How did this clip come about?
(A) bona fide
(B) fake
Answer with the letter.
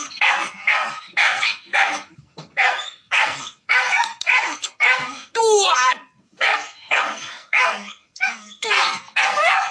B